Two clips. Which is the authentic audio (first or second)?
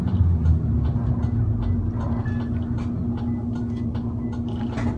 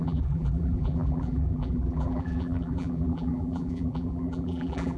first